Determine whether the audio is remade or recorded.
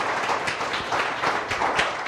recorded